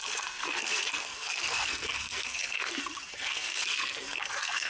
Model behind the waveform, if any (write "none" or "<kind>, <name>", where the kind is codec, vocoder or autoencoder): codec, SNAC